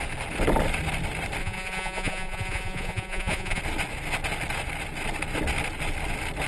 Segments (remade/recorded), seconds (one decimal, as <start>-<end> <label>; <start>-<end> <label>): 0.0-1.4 recorded; 1.4-3.6 remade; 3.6-6.5 recorded